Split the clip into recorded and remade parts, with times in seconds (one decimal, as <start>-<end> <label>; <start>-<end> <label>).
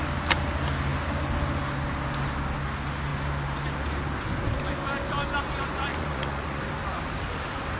0.0-5.9 recorded; 5.9-6.6 remade; 6.6-7.8 recorded